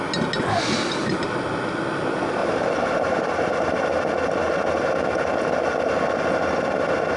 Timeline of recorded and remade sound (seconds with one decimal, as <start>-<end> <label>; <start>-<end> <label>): 0.0-2.4 recorded; 2.4-3.4 remade; 3.4-7.2 recorded

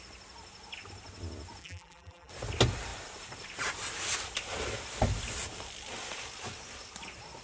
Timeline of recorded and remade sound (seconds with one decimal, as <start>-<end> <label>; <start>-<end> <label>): 0.0-1.6 recorded; 1.6-2.3 remade; 2.3-7.4 recorded

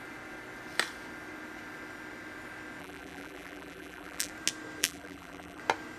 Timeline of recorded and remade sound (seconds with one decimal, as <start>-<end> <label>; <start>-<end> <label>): 0.0-2.8 recorded; 2.8-4.3 remade; 4.3-4.8 recorded; 4.8-5.6 remade; 5.6-6.0 recorded

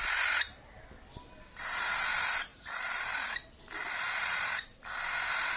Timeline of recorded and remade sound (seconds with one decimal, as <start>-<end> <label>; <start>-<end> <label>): 0.0-2.5 recorded; 2.5-3.3 remade; 3.3-3.8 recorded; 3.8-4.6 remade; 4.6-5.6 recorded

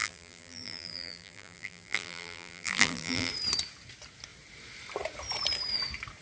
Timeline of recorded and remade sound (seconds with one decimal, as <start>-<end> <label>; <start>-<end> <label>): 0.0-3.3 remade; 3.3-6.2 recorded

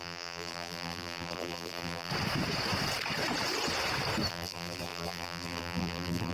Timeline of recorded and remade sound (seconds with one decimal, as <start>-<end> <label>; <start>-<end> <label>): 0.0-2.1 remade; 2.1-4.3 recorded; 4.3-6.3 remade

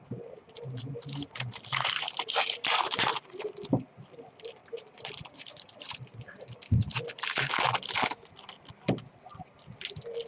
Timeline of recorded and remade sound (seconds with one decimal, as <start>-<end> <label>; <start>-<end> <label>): 0.0-0.9 recorded; 0.9-3.4 remade; 3.4-4.6 recorded; 4.6-6.6 remade; 6.6-10.3 recorded

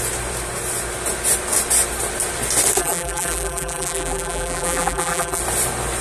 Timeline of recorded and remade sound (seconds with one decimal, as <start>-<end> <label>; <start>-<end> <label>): 0.0-2.8 recorded; 2.8-5.4 remade; 5.4-6.0 recorded